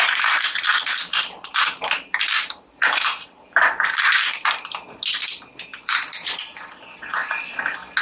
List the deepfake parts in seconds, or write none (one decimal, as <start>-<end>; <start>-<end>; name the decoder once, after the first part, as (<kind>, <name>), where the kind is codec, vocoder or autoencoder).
1.0-5.0 (vocoder, BigVGAN v2); 5.7-6.7